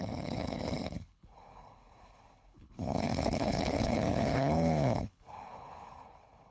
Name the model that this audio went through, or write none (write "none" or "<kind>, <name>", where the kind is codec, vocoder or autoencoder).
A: codec, HILCodec